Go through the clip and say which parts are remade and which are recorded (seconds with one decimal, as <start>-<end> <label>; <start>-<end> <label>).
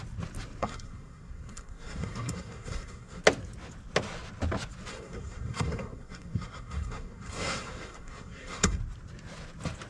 0.0-0.6 recorded; 0.6-3.2 remade; 3.2-4.9 recorded; 4.9-8.8 remade; 8.8-9.9 recorded